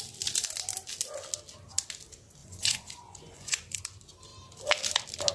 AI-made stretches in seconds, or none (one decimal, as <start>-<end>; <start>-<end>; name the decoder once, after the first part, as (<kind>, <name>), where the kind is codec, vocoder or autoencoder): 2.4-3.8 (vocoder, Vocos)

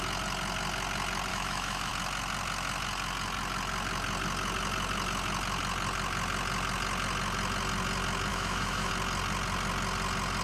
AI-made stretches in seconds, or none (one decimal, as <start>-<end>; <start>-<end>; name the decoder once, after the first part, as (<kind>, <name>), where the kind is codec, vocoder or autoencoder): 1.3-1.9 (autoencoder, DAC-VAE); 8.3-8.9

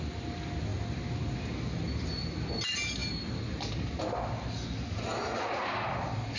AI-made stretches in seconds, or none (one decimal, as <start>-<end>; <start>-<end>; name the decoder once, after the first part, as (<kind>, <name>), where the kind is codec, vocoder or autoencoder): none

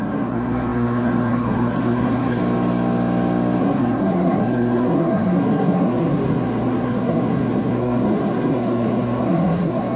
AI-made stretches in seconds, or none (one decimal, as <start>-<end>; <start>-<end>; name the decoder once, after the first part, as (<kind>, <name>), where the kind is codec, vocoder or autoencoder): 0.0-2.4 (codec, SNAC); 3.6-10.0